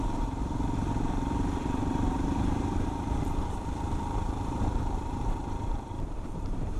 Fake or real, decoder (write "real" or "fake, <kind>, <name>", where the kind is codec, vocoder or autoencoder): fake, vocoder, BigVGAN v2